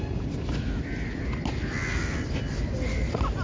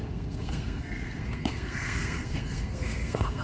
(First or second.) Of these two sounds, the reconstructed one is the second